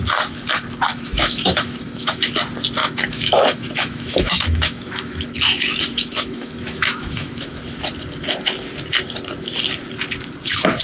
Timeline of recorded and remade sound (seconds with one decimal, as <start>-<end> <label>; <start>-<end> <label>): 0.0-0.9 recorded; 0.9-2.3 remade; 2.3-2.8 recorded; 2.8-7.6 remade; 7.6-10.8 recorded